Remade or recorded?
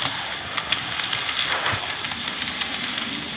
recorded